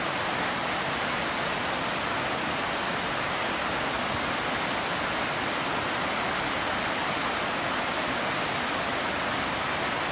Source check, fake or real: real